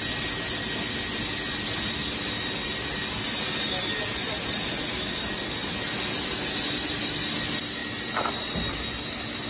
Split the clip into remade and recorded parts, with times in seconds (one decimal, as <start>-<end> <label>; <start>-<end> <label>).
0.0-4.8 recorded; 4.8-5.4 remade; 5.4-9.5 recorded